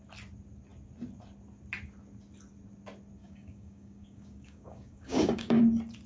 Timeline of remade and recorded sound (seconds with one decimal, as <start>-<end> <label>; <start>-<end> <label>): 0.0-3.2 recorded; 3.2-5.6 remade; 5.6-6.1 recorded